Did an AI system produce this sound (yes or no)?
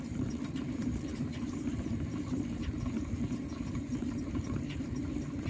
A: yes